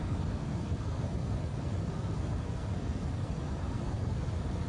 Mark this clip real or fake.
fake